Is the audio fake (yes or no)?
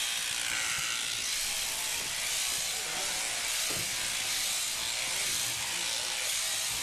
no